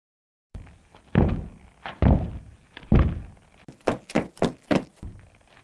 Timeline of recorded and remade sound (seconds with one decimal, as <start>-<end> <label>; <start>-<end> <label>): 0.0-0.9 remade; 0.9-4.3 recorded; 4.3-5.6 remade